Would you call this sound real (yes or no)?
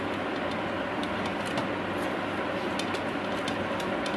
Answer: yes